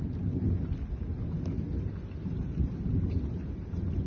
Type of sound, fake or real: real